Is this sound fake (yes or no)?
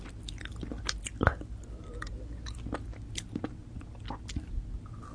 no